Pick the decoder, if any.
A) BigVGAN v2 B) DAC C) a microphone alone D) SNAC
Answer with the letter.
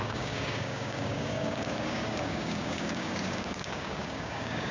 B